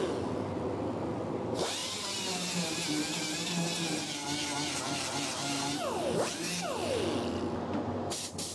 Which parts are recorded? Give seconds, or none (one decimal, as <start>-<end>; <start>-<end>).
0.0-1.8; 2.9-8.5

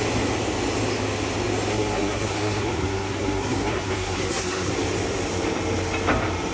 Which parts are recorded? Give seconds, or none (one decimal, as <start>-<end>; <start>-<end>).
0.0-1.7; 4.7-6.5